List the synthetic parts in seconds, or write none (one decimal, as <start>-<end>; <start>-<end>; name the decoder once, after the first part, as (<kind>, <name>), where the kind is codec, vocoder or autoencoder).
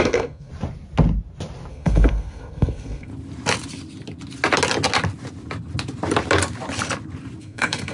0.0-0.5 (codec, SNAC); 1.7-3.1; 7.4-7.9